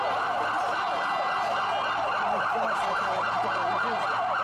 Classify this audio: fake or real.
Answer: real